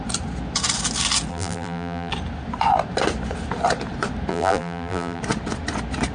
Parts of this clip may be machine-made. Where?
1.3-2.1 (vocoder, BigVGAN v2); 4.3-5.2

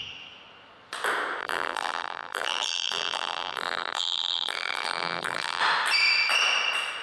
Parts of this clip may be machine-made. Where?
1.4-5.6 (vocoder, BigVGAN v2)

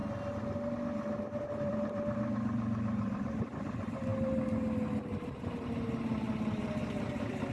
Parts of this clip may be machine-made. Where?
1.4-4.1 (vocoder, BigVGAN v2); 6.6-7.5